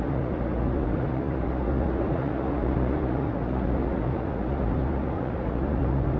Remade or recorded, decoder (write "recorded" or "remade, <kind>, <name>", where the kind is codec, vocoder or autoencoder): remade, vocoder, Vocos